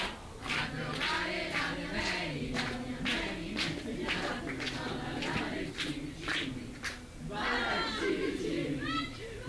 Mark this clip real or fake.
real